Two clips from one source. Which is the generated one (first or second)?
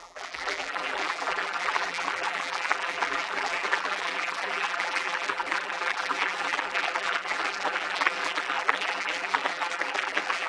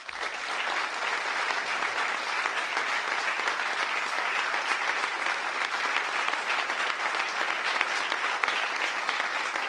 first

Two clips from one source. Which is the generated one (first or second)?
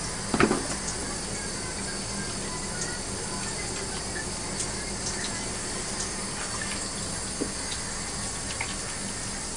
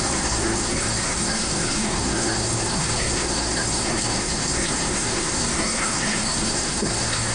second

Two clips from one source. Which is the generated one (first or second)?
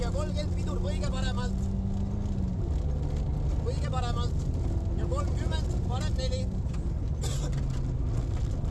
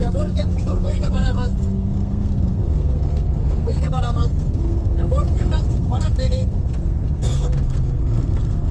second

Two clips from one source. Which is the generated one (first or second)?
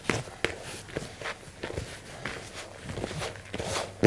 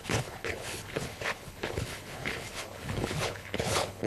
second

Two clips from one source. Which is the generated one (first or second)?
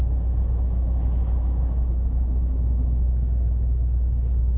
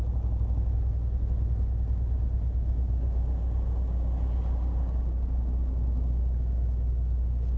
first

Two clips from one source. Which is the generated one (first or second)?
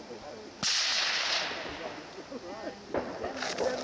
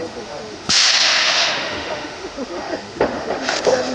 second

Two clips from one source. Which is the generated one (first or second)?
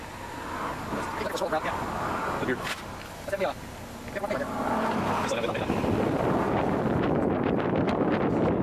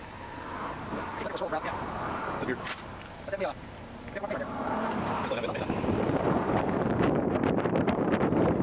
second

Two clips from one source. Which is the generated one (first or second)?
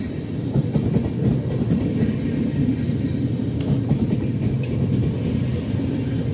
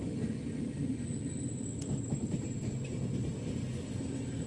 first